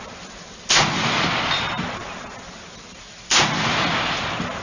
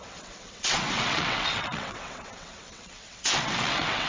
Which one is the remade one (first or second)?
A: second